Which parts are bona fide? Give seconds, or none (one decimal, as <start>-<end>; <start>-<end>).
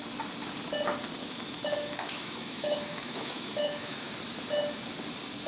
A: 0.0-1.2; 4.1-5.5